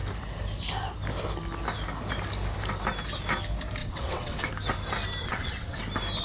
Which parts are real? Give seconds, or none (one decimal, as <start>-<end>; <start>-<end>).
0.0-3.8; 4.5-5.2; 5.8-6.2